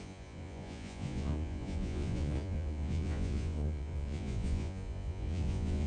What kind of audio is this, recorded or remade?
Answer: remade